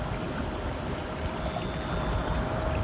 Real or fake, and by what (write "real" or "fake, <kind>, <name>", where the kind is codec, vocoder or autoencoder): real